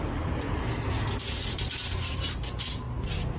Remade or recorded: recorded